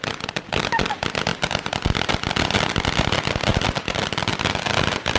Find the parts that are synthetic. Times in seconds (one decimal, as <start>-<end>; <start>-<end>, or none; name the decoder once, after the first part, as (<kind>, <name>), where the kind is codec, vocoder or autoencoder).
none